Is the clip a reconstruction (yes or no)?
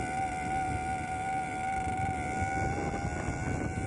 yes